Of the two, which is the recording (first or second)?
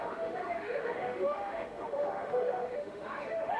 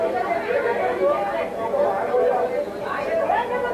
second